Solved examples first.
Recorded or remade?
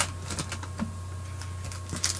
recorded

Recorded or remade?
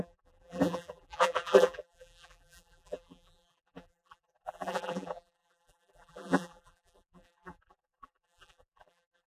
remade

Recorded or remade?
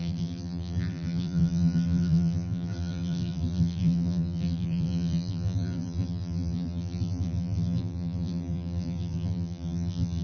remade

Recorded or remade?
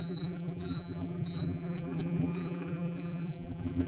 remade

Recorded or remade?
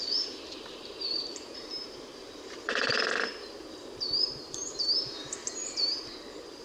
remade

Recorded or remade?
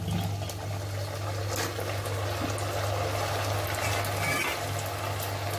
recorded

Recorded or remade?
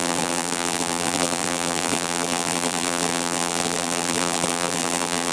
remade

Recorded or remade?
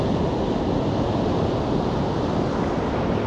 recorded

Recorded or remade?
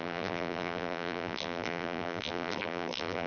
remade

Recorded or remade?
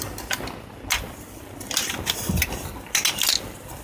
recorded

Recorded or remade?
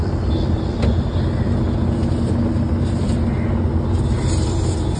recorded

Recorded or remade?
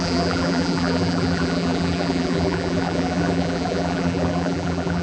remade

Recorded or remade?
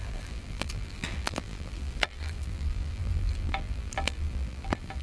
remade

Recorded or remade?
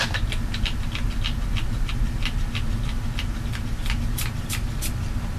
recorded